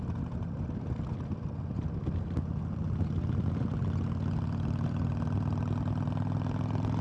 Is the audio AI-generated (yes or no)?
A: no